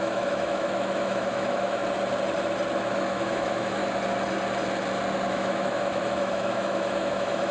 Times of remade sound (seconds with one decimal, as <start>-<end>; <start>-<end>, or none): 0.0-1.8; 3.1-3.8; 5.3-7.5